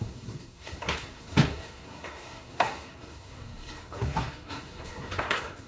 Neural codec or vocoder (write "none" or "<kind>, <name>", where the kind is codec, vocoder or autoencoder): codec, SNAC